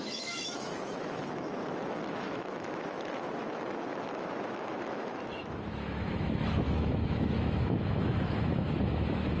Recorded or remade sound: remade